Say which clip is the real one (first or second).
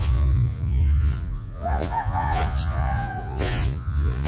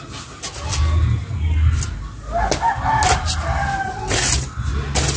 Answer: second